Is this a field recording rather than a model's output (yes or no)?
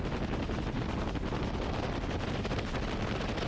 yes